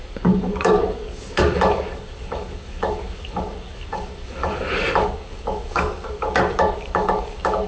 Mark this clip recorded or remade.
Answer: remade